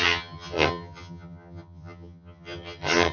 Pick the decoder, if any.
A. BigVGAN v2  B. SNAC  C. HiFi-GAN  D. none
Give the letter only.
C